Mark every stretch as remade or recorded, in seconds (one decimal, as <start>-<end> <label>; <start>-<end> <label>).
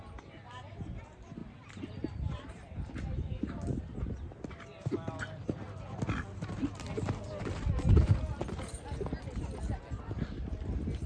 0.0-1.4 recorded; 1.4-2.9 remade; 2.9-11.1 recorded